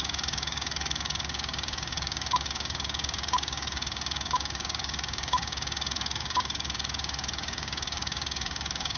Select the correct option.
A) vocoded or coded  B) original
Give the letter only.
A